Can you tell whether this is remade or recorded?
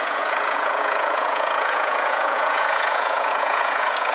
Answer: remade